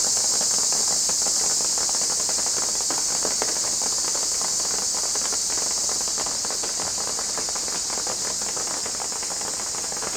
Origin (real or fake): real